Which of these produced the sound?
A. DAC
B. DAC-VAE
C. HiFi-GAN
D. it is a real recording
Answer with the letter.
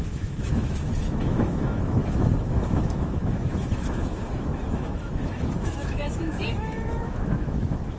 B